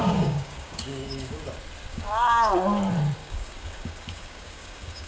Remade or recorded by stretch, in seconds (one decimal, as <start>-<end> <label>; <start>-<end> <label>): 0.0-1.4 remade; 1.4-1.9 recorded; 1.9-2.5 remade; 2.5-3.2 recorded; 3.2-5.1 remade